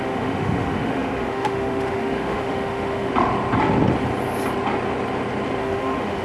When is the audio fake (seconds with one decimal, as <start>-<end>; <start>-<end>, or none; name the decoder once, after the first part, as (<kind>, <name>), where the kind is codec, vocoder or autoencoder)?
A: 0.0-3.1 (autoencoder, DAC-VAE); 5.6-6.2